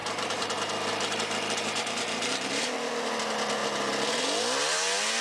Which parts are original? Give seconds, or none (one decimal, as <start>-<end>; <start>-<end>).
3.1-5.2